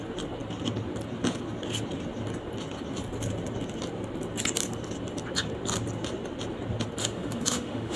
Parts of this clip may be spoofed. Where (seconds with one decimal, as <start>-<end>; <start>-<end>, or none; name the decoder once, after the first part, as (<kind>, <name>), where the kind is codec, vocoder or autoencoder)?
7.0-8.0 (autoencoder, DAC-VAE)

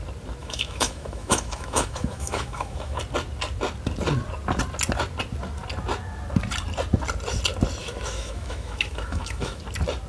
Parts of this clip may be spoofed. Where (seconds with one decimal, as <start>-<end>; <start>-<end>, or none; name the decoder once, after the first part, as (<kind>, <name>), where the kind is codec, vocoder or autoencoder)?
0.4-3.0 (autoencoder, DAC-VAE); 7.8-9.6

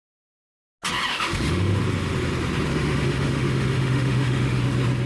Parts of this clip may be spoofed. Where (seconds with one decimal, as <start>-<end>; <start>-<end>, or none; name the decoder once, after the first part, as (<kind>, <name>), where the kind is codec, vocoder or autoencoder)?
1.1-1.8 (autoencoder, DAC-VAE); 2.7-4.6

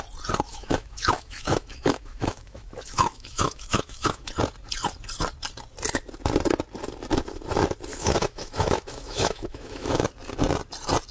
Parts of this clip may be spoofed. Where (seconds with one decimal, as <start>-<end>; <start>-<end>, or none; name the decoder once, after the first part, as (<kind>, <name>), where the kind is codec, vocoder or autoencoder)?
0.5-4.3 (autoencoder, DAC-VAE); 7.9-10.1

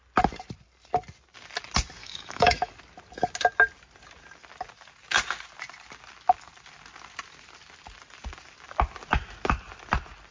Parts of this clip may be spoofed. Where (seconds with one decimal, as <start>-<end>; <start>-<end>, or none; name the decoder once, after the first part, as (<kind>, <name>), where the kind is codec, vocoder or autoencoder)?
2.0-2.7 (autoencoder, DAC-VAE)

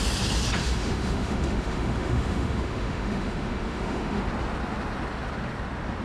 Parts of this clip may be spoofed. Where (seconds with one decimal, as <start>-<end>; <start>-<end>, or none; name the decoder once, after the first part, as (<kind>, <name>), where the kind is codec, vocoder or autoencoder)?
0.6-4.2 (autoencoder, DAC-VAE)

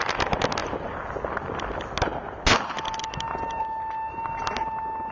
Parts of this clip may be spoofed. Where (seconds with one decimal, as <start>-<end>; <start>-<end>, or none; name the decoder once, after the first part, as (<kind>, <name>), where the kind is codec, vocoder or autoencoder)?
none

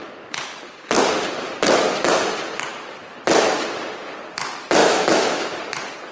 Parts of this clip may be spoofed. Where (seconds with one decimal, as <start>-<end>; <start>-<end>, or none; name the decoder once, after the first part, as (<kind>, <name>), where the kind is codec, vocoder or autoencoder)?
4.8-5.5 (autoencoder, DAC-VAE)